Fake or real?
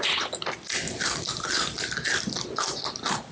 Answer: real